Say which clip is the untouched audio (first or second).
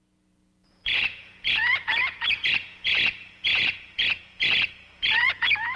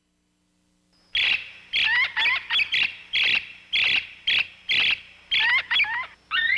second